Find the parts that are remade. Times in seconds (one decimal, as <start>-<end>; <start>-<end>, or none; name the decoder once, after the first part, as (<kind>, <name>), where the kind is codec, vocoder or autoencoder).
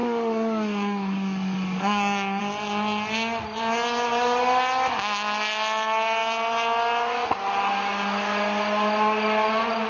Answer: 0.0-2.4 (codec, DAC)